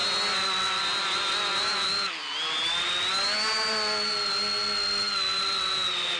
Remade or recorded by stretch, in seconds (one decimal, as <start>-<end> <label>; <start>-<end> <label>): 0.0-1.0 recorded; 1.0-1.5 remade; 1.5-5.1 recorded; 5.1-6.2 remade